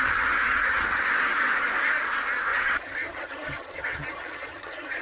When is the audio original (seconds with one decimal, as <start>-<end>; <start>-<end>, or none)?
1.1-2.5